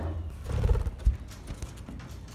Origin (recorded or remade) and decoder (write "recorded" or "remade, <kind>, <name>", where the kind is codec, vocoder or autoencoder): recorded